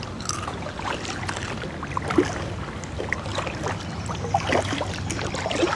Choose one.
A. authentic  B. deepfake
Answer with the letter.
A